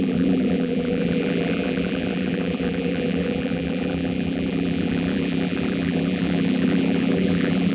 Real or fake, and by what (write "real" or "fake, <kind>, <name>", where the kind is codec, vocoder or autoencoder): fake, vocoder, BigVGAN v2